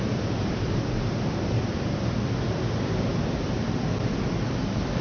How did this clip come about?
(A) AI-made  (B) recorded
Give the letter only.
B